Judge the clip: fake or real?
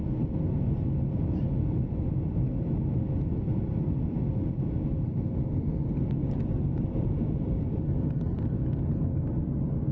real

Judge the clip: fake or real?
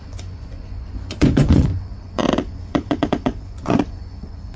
fake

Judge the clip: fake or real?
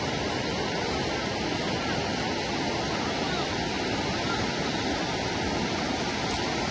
real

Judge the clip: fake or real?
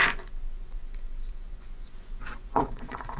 fake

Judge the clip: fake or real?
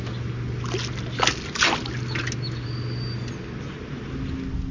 real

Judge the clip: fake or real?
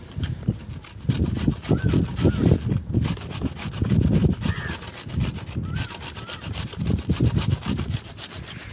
real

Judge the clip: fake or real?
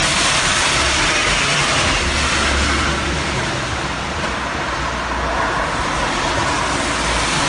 real